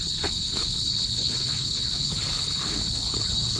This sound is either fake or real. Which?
fake